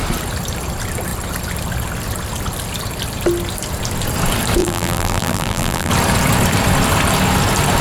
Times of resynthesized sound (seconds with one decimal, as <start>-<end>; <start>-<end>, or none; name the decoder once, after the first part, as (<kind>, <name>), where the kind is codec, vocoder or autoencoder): 4.6-5.9 (vocoder, BigVGAN v2)